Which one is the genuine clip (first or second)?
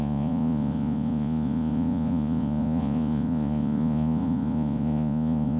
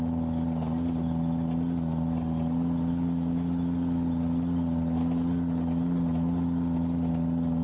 second